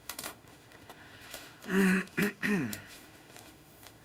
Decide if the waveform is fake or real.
fake